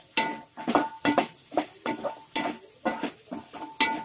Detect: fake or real real